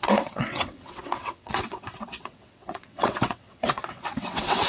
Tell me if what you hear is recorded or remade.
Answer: remade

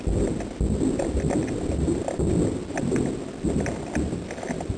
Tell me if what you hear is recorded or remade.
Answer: recorded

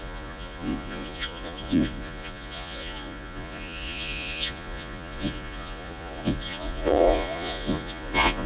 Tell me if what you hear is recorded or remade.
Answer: remade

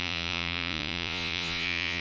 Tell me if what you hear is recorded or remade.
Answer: remade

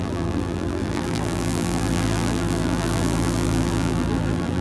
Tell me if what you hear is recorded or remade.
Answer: remade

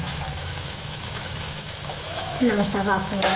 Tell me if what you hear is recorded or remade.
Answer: remade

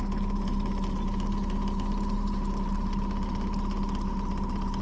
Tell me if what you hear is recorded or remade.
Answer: recorded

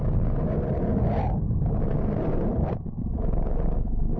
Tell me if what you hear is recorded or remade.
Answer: recorded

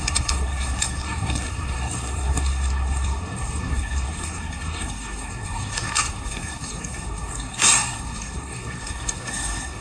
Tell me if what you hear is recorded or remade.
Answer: remade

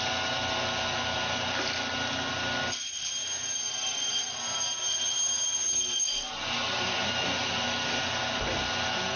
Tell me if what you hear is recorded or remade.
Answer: recorded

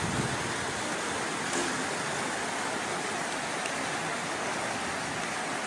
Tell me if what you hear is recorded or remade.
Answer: recorded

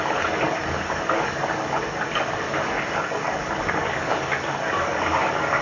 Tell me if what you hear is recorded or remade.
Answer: remade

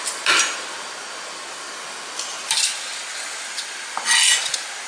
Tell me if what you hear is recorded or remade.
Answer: recorded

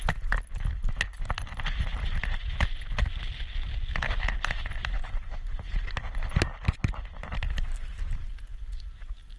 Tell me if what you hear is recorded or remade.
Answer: recorded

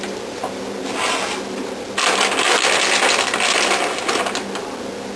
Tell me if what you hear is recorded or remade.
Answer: recorded